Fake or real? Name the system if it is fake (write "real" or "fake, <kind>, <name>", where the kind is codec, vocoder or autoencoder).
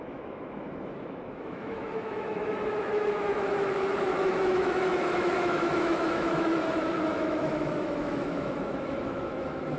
fake, autoencoder, DAC-VAE